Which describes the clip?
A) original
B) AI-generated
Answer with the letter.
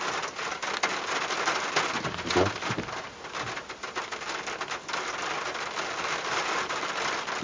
A